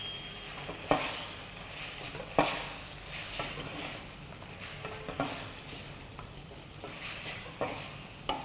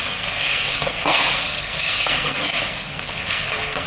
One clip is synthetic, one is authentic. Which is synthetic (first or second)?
second